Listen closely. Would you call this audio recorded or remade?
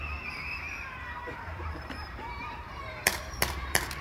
remade